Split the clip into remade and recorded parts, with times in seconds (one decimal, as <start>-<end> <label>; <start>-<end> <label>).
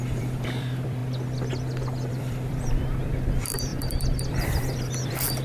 0.0-1.0 remade; 1.0-2.1 recorded; 2.1-5.4 remade